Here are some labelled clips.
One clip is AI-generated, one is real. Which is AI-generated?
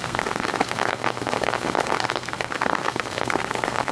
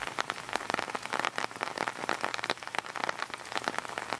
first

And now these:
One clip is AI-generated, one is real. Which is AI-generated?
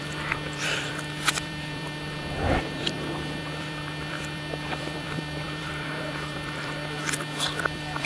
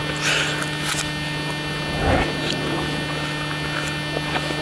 first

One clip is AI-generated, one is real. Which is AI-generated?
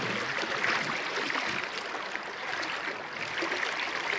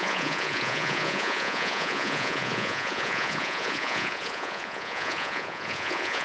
second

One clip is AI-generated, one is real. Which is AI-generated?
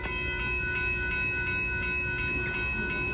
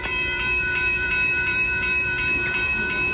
second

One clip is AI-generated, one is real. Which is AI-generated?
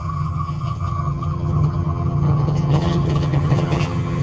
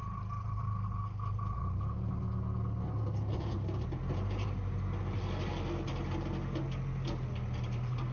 first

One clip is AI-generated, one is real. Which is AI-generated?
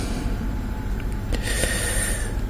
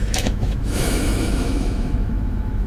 second